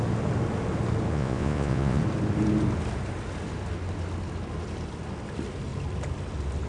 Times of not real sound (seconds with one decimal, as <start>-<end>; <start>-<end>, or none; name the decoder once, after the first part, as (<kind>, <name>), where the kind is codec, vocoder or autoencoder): 1.1-2.0 (vocoder, Vocos)